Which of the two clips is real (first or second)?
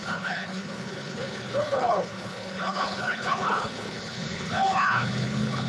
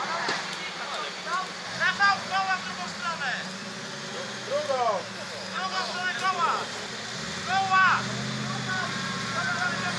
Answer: second